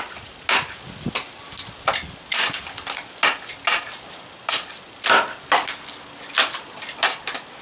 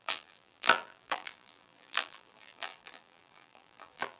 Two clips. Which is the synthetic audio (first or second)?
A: second